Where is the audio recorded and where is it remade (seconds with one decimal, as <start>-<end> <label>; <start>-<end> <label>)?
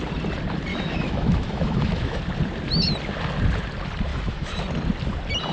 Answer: 0.0-0.7 recorded; 0.7-2.2 remade; 2.2-4.1 recorded; 4.1-4.6 remade; 4.6-5.5 recorded